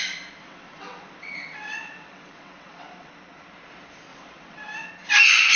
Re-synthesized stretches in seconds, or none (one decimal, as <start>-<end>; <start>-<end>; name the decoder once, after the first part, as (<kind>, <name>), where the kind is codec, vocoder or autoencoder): 0.4-3.1 (vocoder, WaveNeXt); 4.1-4.9